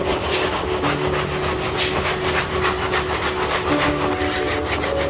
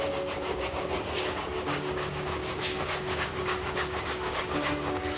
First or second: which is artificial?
second